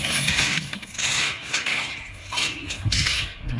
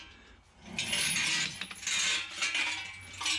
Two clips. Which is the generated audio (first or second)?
first